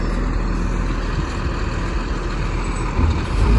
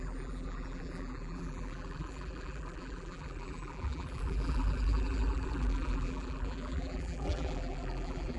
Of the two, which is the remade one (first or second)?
second